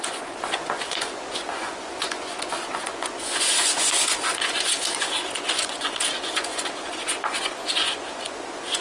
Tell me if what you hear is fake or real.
fake